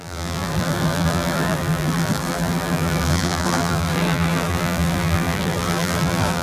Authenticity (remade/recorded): remade